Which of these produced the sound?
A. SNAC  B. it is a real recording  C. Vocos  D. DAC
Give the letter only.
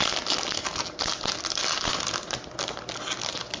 B